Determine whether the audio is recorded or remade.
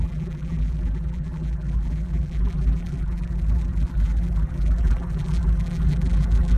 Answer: remade